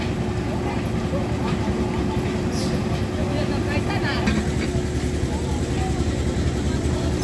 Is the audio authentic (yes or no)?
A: yes